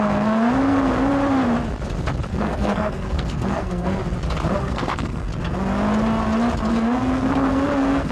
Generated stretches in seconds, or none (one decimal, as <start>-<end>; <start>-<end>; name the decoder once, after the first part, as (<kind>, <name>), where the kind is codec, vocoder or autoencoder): 0.0-1.1 (codec, SNAC); 2.3-4.0; 4.6-5.3; 6.7-8.1